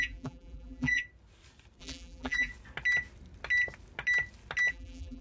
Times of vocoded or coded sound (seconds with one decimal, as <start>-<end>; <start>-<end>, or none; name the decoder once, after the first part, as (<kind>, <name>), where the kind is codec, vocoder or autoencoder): 0.0-1.0 (vocoder, BigVGAN v2); 1.8-2.5; 4.7-5.2